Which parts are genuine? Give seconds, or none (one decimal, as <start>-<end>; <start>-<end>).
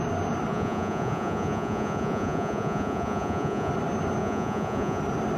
0.0-0.5; 3.7-4.2; 5.0-5.4